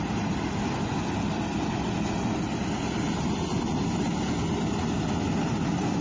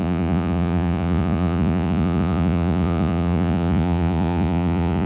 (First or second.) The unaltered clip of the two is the first